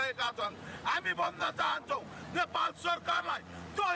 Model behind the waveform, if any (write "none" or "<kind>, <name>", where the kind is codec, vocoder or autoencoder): vocoder, Vocos